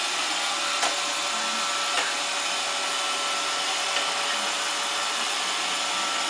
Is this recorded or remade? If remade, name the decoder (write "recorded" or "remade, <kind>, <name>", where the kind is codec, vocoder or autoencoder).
recorded